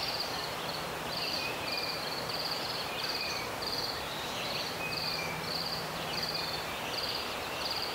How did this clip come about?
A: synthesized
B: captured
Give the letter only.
A